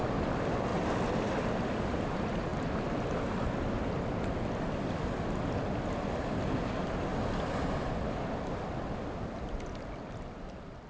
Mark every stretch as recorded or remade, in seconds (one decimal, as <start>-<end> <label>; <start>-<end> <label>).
0.0-10.9 recorded